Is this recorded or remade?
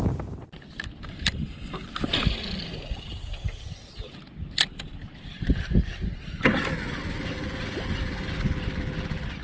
recorded